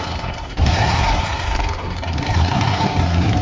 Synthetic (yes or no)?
yes